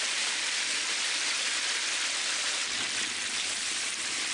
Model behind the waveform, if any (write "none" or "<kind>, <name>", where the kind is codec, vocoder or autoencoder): none